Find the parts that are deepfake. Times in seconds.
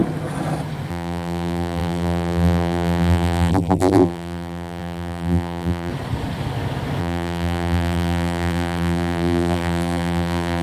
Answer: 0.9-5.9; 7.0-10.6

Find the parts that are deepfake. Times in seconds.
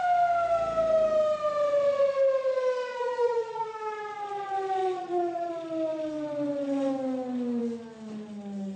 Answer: 2.9-3.7; 4.8-5.5